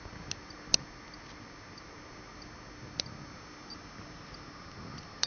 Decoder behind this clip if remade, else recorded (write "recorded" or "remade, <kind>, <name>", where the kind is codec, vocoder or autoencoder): recorded